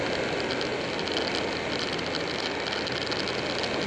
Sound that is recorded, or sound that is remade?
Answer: recorded